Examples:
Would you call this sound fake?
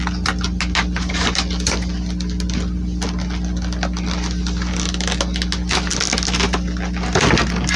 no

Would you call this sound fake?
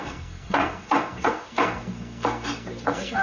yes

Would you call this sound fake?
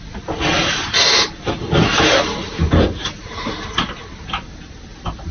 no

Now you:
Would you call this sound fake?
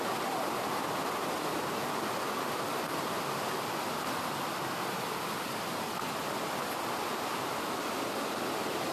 no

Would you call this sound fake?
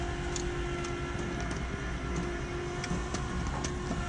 no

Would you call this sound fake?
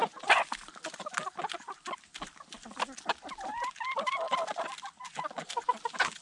no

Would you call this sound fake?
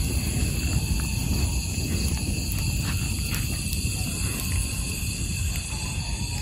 no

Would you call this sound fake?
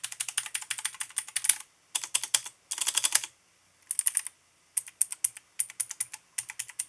no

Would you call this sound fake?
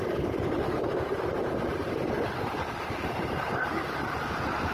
yes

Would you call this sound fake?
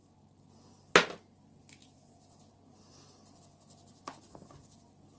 no